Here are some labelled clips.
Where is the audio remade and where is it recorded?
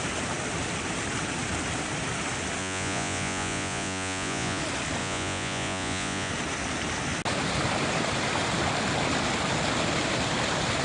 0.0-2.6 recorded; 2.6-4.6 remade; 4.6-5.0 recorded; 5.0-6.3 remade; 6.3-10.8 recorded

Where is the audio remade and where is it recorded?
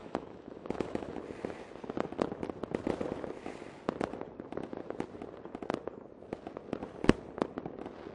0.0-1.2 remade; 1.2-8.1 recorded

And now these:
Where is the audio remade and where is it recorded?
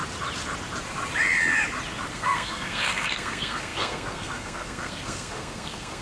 0.0-2.1 recorded; 2.1-6.0 remade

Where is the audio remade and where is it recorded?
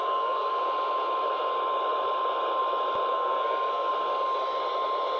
0.0-0.5 remade; 0.5-3.1 recorded; 3.1-3.9 remade; 3.9-5.2 recorded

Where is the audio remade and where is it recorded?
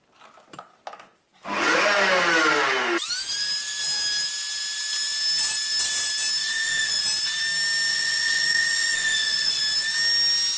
0.0-6.4 recorded; 6.4-7.0 remade; 7.0-7.9 recorded; 7.9-9.6 remade; 9.6-10.6 recorded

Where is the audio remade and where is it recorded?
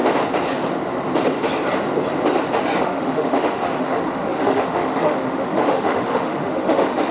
0.0-2.8 recorded; 2.8-7.1 remade